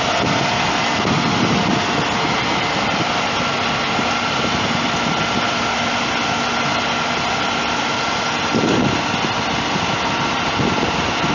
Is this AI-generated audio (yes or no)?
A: no